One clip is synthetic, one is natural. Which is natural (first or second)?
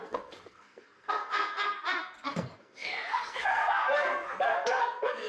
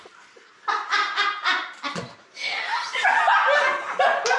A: second